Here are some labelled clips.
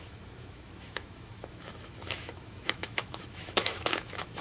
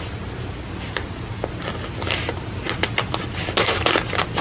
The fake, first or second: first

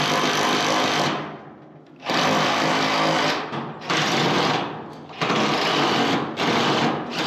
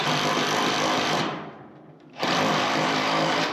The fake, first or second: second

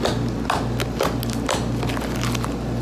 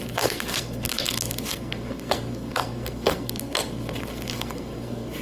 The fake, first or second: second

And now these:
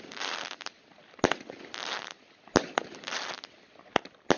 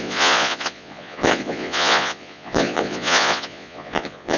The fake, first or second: second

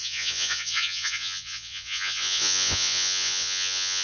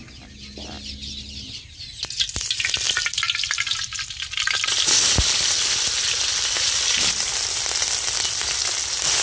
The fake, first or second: first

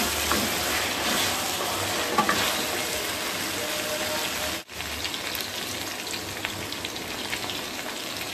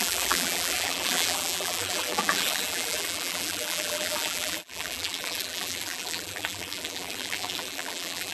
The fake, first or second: second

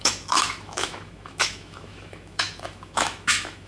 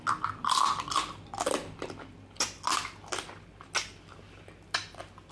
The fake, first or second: first